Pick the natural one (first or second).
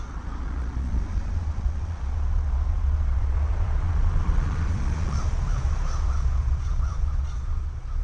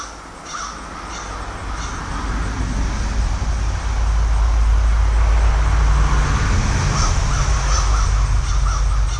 second